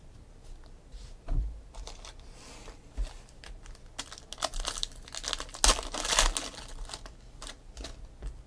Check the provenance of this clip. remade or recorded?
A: recorded